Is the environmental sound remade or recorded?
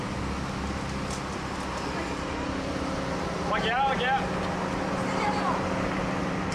recorded